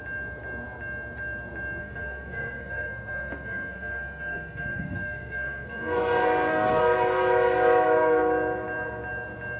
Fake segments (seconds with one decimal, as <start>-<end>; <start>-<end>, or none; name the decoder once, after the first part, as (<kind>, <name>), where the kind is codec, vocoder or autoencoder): 1.8-6.8 (codec, SNAC)